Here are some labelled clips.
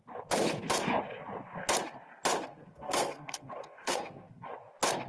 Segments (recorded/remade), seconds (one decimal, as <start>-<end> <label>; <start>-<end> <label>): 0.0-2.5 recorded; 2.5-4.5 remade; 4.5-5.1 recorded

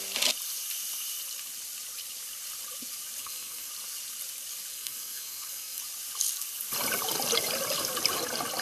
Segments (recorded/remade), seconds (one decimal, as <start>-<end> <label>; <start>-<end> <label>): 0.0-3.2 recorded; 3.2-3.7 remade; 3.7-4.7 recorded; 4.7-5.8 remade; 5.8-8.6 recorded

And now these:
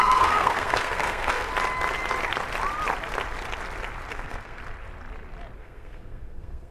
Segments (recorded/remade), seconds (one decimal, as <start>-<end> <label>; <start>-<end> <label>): 0.0-1.5 remade; 1.5-4.1 recorded; 4.1-4.6 remade; 4.6-5.6 recorded; 5.6-6.7 remade

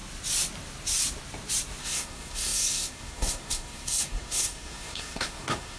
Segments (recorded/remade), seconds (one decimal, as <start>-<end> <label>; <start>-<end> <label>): 0.0-1.8 recorded; 1.8-5.8 remade

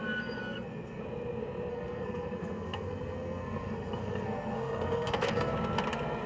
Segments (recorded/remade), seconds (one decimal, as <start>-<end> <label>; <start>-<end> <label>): 0.0-0.4 recorded; 0.4-1.0 remade; 1.0-1.7 recorded; 1.7-5.5 remade; 5.5-6.3 recorded

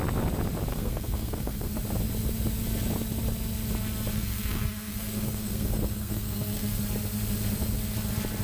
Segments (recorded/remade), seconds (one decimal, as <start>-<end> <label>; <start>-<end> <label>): 0.0-0.7 recorded; 0.7-1.7 remade; 1.7-4.1 recorded; 4.1-6.8 remade; 6.8-8.4 recorded

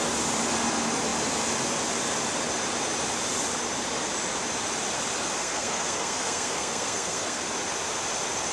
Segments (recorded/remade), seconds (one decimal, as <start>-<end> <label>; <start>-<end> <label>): 0.0-5.4 recorded; 5.4-7.4 remade; 7.4-8.5 recorded